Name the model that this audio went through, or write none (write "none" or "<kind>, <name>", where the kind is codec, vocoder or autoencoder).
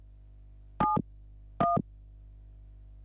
none